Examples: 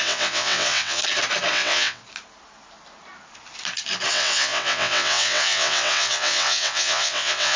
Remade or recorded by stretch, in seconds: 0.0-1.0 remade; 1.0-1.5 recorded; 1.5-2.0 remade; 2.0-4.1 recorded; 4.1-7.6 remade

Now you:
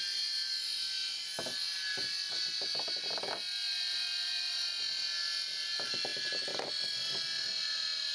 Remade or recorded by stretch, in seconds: 0.0-3.7 recorded; 3.7-4.6 remade; 4.6-6.1 recorded; 6.1-6.7 remade; 6.7-8.1 recorded

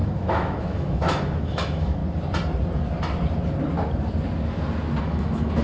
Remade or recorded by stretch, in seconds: 0.0-2.0 remade; 2.0-5.0 recorded; 5.0-5.6 remade

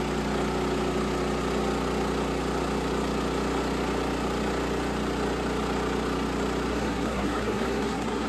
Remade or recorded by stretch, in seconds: 0.0-6.7 recorded; 6.7-8.3 remade